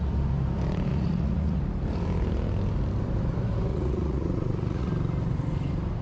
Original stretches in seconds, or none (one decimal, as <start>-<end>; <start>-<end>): 0.0-0.9; 1.6-3.7; 4.9-6.0